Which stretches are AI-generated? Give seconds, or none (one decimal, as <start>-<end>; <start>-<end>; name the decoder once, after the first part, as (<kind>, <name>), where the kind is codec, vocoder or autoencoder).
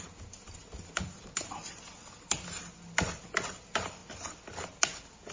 none